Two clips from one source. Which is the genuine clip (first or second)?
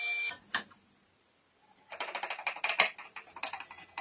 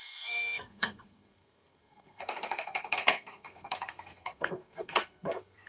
first